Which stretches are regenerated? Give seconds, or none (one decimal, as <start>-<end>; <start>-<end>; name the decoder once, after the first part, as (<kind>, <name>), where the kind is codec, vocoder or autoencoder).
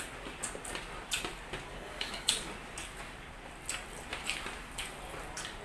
1.7-2.5 (codec, DAC)